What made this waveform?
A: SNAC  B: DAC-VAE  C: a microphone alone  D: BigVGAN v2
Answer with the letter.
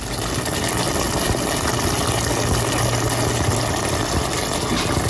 C